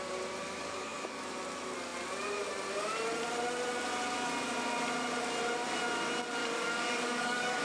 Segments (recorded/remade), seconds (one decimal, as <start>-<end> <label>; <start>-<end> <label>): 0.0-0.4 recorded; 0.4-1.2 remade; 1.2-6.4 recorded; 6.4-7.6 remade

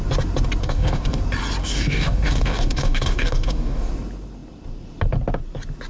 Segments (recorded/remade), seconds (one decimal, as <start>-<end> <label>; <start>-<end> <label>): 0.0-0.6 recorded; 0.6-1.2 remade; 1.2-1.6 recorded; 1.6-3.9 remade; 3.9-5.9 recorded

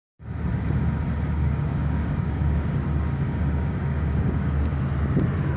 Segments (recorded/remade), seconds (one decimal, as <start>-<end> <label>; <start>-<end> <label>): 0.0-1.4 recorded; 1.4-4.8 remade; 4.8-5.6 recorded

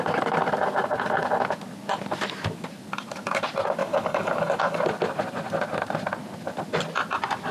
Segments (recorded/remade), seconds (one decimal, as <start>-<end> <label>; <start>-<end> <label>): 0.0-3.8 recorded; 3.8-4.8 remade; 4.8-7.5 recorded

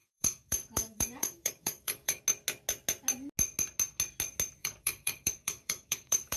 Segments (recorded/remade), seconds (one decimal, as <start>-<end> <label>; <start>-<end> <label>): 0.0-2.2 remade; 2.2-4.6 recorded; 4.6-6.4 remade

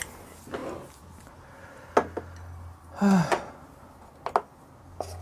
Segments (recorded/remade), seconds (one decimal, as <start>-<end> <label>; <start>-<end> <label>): 0.0-5.2 recorded